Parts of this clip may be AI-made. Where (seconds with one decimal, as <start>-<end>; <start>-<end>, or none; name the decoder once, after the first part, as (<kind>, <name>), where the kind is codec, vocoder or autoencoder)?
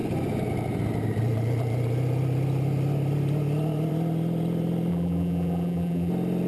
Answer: 4.9-6.1 (vocoder, BigVGAN v2)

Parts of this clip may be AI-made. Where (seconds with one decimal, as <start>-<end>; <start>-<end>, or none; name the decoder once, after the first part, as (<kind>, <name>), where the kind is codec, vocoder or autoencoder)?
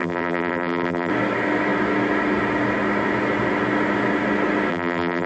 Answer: 0.0-1.1 (vocoder, BigVGAN v2); 4.7-5.3